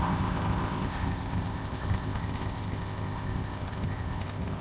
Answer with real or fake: fake